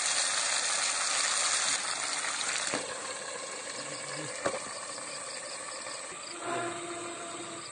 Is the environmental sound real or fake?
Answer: real